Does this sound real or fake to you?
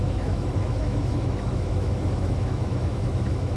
fake